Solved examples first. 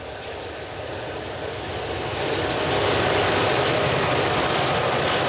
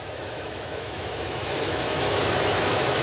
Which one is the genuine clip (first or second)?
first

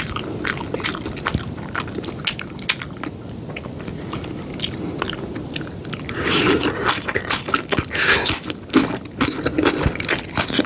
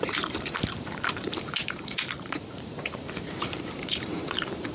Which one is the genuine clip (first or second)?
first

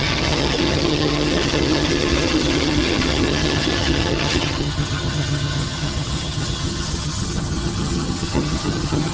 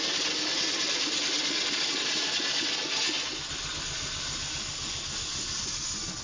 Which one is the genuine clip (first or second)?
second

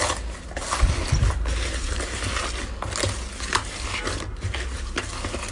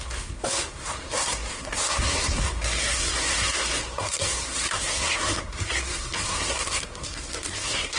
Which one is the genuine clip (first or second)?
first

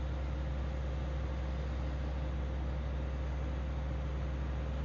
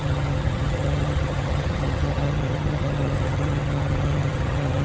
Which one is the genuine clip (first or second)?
first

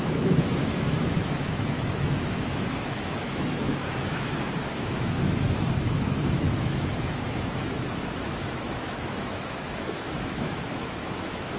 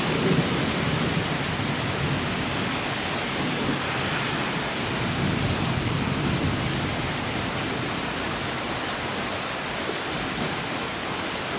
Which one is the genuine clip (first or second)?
second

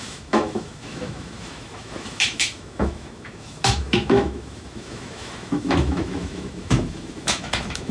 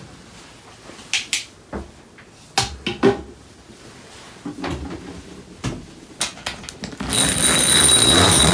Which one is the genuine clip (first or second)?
second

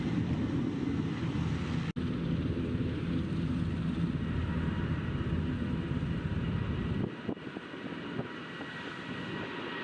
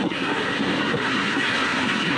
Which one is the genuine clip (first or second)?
first